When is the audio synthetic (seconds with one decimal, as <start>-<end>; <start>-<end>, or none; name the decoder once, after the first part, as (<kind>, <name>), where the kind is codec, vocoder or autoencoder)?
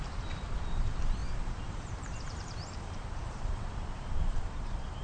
0.0-5.0 (vocoder, BigVGAN v2)